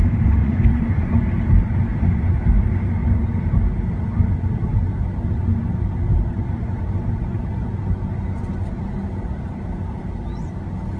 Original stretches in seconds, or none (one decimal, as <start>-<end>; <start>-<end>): 0.0-0.4; 1.2-11.0